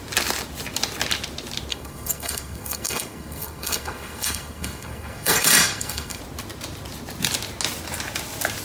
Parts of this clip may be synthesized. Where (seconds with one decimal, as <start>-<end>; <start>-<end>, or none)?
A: 1.7-6.2